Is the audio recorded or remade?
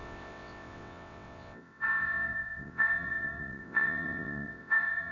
remade